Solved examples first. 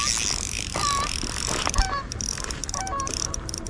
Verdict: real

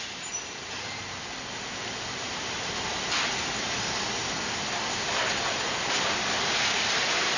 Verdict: real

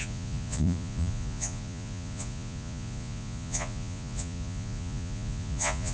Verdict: fake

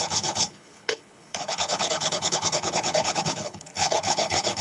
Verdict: fake